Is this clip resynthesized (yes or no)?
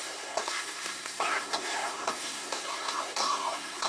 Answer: yes